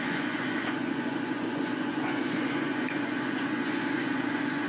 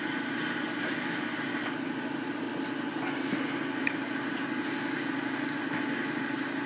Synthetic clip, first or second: first